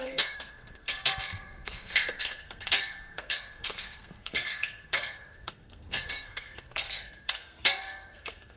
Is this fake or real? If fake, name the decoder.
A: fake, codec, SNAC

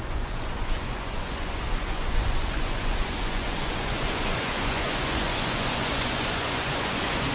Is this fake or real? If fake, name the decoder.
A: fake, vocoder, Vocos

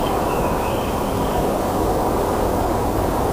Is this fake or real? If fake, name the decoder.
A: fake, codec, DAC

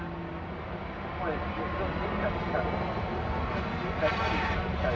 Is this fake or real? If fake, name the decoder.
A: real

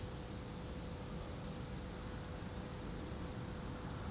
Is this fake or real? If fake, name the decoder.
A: real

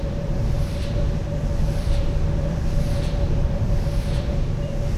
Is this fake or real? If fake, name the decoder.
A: fake, vocoder, BigVGAN v2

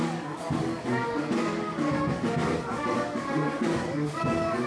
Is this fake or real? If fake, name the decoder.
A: fake, codec, DAC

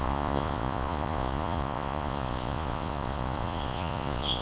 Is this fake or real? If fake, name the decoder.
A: fake, vocoder, Vocos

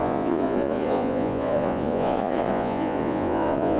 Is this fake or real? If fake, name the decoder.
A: fake, vocoder, Vocos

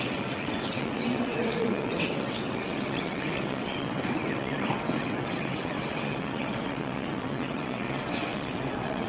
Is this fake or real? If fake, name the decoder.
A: fake, vocoder, WaveNeXt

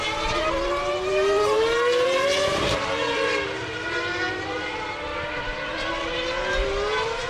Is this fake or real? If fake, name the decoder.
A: fake, vocoder, BigVGAN v2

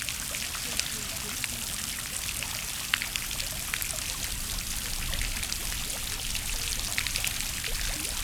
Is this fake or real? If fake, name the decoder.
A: real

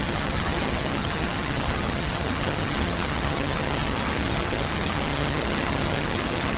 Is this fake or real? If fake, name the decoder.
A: fake, vocoder, HiFi-GAN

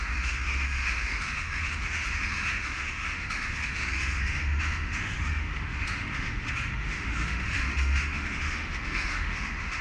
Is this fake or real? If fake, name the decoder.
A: fake, autoencoder, DAC-VAE